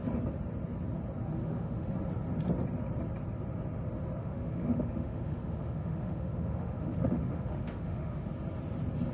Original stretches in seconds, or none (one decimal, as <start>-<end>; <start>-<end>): 0.0-1.4; 1.9-4.2; 8.3-9.1